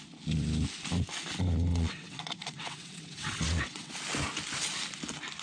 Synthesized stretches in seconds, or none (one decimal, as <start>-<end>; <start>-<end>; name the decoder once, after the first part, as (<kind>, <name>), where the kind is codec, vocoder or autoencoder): 1.7-3.9 (vocoder, WaveNeXt)